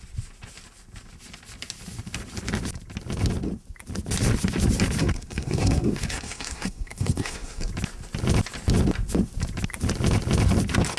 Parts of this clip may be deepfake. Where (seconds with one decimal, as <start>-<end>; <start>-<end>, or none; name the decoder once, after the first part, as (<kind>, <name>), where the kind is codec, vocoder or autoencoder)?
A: 5.0-7.7 (codec, SNAC)